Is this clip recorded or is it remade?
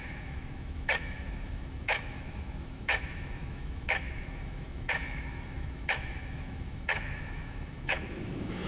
remade